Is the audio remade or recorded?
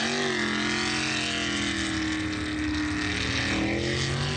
recorded